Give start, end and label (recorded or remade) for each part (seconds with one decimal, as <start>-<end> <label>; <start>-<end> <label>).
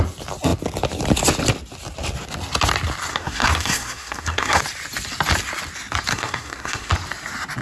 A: 0.0-3.1 recorded; 3.1-4.6 remade; 4.6-6.1 recorded; 6.1-6.9 remade; 6.9-7.6 recorded